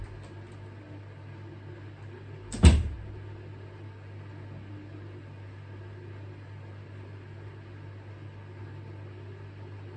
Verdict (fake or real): real